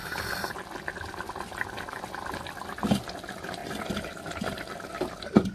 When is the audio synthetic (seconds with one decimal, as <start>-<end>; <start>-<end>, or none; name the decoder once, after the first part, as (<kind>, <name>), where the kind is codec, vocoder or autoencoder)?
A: 0.0-2.2 (vocoder, BigVGAN v2)